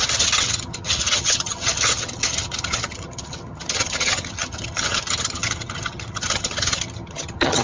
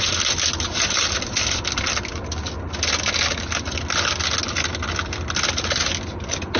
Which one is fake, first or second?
first